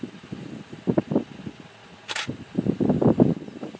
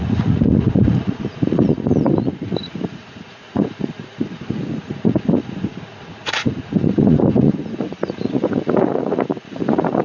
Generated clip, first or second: second